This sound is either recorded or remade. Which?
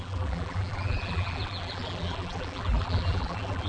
remade